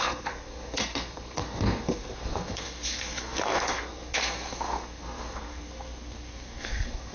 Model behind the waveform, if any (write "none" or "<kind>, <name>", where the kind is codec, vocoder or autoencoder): codec, SNAC